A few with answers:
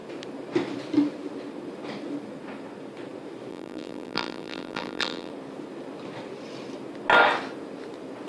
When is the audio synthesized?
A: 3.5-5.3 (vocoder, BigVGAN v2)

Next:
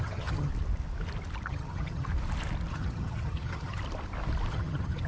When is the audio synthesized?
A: 0.0-0.5 (vocoder, HiFi-GAN); 1.5-2.1; 2.7-3.8; 4.5-5.1